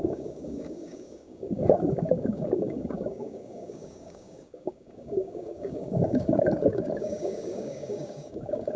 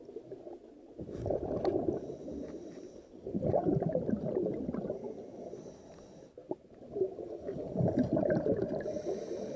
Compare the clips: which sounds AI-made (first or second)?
first